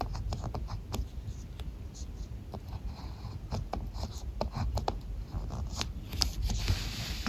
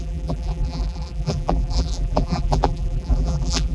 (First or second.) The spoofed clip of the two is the second